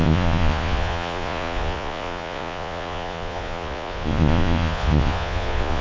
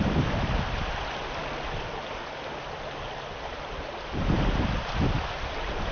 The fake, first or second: first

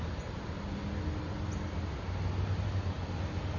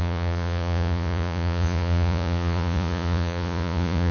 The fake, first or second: second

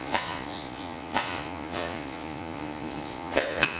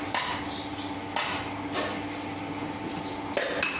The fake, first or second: first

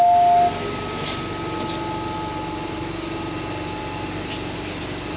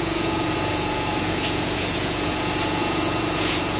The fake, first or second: second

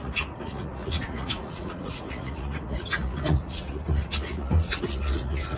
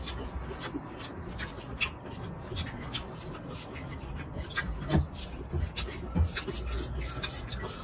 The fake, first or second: first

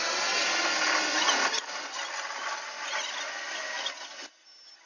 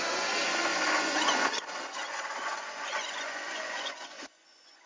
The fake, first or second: second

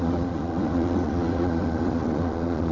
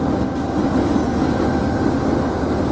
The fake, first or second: first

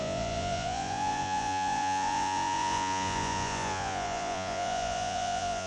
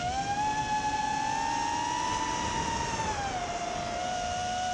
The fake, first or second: first